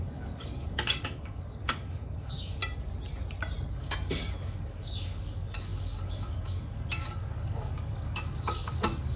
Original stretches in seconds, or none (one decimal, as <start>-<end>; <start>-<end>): 2.6-3.7